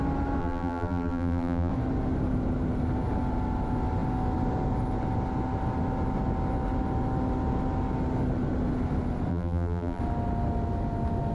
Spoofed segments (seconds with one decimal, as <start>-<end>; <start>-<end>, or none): 0.4-1.7; 9.3-10.0